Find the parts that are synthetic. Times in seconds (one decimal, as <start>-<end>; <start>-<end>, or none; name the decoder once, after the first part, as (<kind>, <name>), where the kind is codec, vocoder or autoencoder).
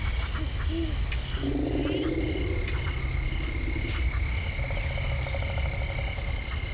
none